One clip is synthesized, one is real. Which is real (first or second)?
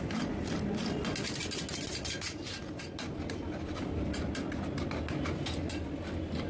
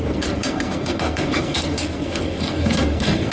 first